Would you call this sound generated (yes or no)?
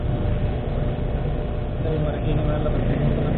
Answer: no